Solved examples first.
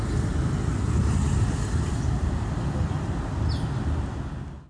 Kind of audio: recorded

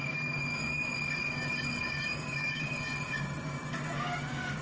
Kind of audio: remade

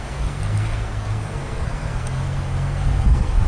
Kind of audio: remade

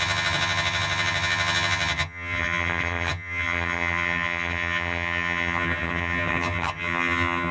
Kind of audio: remade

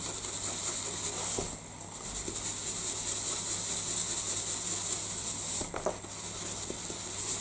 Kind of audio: recorded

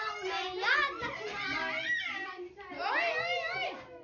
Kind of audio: recorded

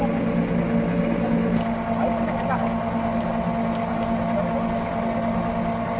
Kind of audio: recorded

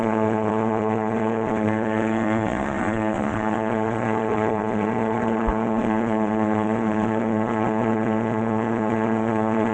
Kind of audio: remade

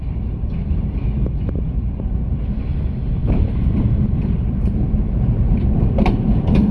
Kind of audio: remade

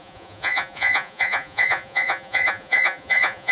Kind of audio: remade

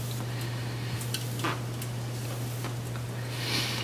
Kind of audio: recorded